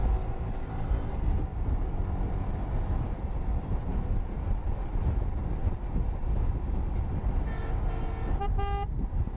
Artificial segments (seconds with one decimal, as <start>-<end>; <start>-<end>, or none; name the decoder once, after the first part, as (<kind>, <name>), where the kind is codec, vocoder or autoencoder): 0.0-1.0 (vocoder, BigVGAN v2); 3.9-4.5